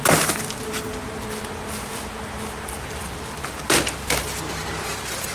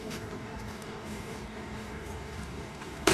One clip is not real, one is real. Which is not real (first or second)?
second